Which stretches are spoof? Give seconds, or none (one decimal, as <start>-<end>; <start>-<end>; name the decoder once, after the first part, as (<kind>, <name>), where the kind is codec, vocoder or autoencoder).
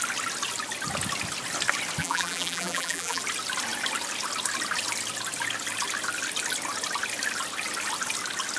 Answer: 2.0-3.2 (vocoder, BigVGAN v2)